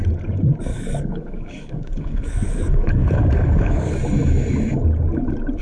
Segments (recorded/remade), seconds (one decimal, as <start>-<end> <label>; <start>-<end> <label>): 0.0-0.7 recorded; 0.7-4.0 remade; 4.0-5.6 recorded